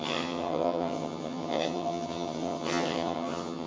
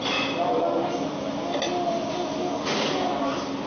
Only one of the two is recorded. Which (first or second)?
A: second